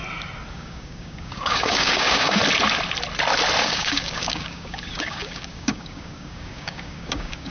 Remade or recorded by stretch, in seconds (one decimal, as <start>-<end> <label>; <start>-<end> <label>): 0.0-0.5 recorded; 0.5-2.4 remade; 2.4-3.6 recorded; 3.6-7.5 remade